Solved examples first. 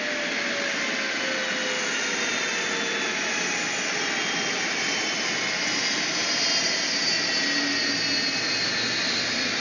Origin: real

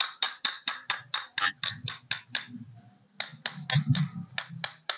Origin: real